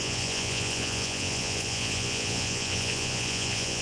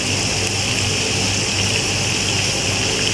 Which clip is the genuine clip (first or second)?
second